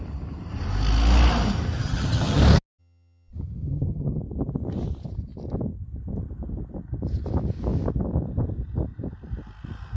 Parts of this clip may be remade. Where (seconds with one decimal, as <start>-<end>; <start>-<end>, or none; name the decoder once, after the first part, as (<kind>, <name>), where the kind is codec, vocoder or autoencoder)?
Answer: 1.8-2.4 (vocoder, HiFi-GAN); 2.8-4.2